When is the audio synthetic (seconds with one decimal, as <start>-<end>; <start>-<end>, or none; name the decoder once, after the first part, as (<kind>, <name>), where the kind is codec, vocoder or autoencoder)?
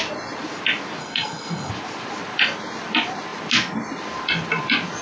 1.0-1.7 (codec, SNAC)